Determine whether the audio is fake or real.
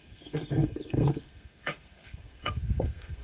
fake